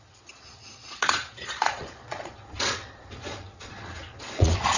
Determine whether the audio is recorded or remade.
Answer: remade